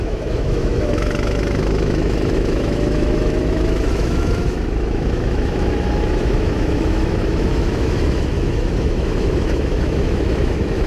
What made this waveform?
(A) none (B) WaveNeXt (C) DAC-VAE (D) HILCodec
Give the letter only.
C